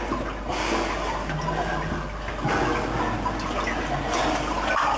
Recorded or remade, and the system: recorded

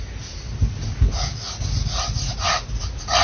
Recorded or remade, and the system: recorded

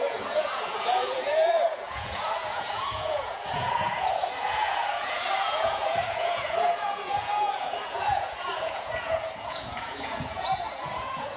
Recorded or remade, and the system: remade, vocoder, Vocos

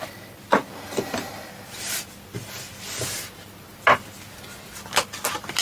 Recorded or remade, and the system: recorded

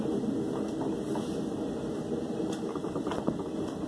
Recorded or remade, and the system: recorded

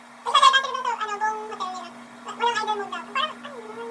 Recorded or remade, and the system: recorded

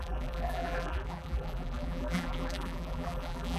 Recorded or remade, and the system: remade, vocoder, BigVGAN v2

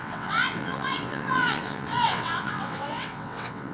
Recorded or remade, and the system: remade, vocoder, WaveNeXt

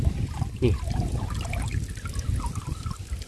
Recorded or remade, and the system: recorded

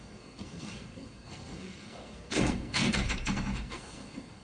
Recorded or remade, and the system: remade, codec, SNAC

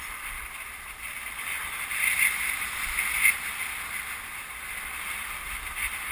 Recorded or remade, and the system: recorded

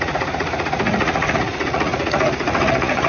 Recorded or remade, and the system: remade, vocoder, Vocos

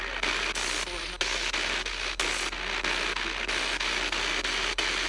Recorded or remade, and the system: recorded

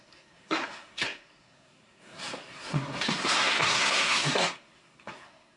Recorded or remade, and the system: remade, codec, SNAC